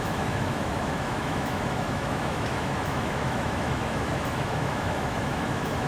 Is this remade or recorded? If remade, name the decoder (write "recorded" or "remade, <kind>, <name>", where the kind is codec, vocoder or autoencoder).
remade, autoencoder, DAC-VAE